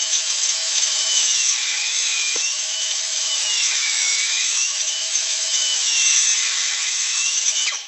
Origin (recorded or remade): remade